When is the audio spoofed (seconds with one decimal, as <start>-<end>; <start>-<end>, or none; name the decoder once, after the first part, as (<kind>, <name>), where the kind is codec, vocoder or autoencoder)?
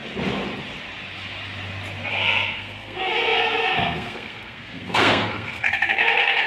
2.1-6.5 (codec, SNAC)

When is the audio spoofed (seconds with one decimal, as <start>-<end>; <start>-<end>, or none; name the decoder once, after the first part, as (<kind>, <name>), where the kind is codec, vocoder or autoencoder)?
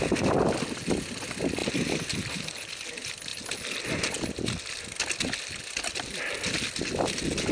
1.6-2.7 (vocoder, BigVGAN v2)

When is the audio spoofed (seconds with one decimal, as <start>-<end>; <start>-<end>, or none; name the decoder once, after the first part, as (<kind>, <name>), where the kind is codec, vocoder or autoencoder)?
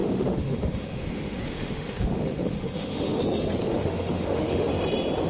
0.0-3.2 (autoencoder, DAC-VAE); 3.7-4.7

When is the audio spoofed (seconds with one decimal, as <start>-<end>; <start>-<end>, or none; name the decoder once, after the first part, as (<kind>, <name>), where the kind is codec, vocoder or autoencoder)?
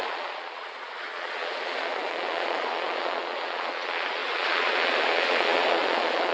0.0-6.3 (vocoder, Vocos)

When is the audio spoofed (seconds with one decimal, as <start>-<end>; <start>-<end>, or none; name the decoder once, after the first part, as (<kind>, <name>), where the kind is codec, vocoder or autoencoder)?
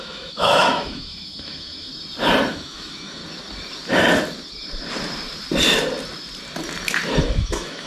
0.0-1.9 (autoencoder, DAC-VAE); 2.5-3.2; 7.2-7.9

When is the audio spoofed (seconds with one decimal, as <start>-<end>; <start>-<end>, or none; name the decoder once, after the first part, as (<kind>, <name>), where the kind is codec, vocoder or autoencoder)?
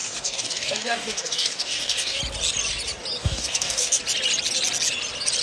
0.0-2.2 (codec, DAC); 3.2-4.0